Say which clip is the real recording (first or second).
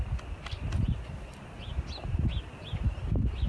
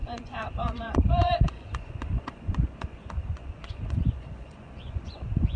first